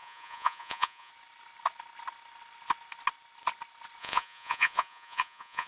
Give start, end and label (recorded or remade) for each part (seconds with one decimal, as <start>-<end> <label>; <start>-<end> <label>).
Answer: 0.0-1.1 remade; 1.1-4.0 recorded; 4.0-5.7 remade